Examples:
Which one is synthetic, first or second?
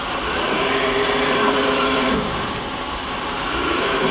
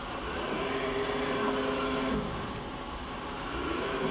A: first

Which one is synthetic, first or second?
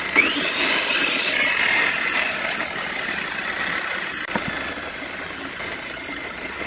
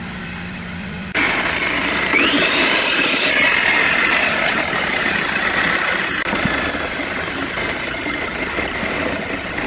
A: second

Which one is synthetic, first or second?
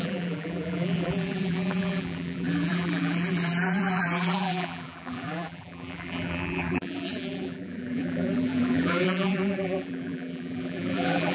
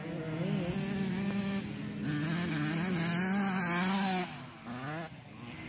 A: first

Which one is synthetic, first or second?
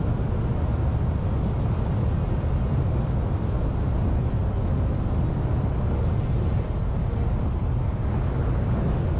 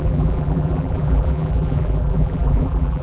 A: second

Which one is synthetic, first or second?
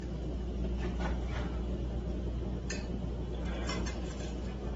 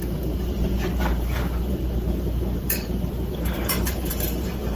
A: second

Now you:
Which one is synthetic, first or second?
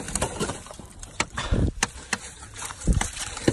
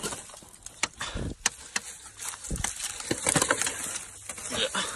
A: first